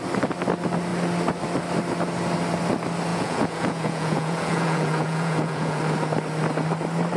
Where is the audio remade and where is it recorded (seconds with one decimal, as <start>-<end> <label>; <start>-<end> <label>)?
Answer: 0.0-3.1 recorded; 3.1-5.8 remade; 5.8-7.2 recorded

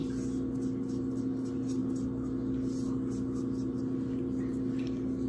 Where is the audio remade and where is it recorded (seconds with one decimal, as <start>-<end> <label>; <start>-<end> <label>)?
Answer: 0.0-5.3 recorded